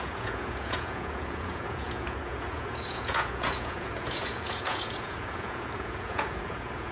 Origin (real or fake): fake